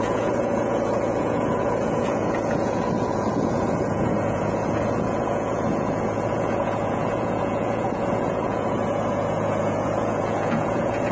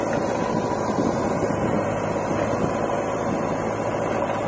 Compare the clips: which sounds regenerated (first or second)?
first